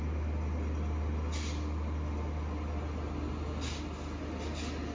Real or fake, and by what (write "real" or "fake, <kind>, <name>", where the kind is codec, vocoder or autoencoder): real